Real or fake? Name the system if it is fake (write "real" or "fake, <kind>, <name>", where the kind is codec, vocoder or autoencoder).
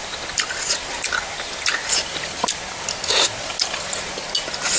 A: real